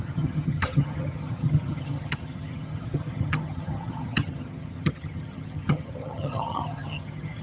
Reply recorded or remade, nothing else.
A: remade